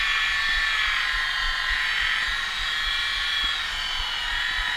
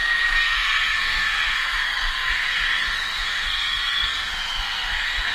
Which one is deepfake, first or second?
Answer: second